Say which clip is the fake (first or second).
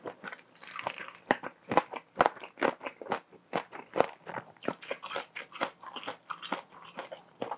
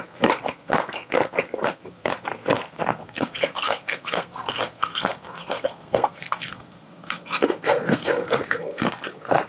second